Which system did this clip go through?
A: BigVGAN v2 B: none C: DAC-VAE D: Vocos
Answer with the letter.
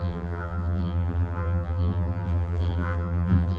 A